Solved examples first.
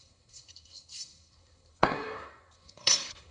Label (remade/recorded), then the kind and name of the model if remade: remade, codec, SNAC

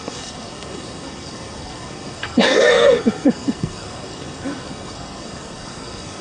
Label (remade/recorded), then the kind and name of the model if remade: remade, codec, SNAC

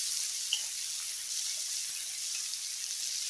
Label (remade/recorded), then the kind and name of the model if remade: recorded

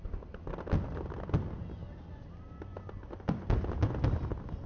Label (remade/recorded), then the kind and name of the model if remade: recorded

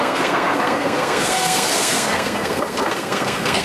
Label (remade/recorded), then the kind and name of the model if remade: remade, codec, SNAC